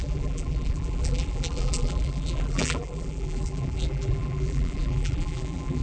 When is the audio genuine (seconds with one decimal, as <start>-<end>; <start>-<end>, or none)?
none

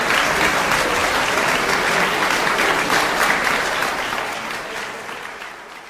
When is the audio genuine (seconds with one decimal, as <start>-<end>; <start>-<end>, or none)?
0.0-5.9

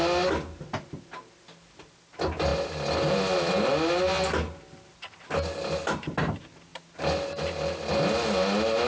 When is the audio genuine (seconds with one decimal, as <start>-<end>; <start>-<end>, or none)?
0.0-2.5; 3.5-8.9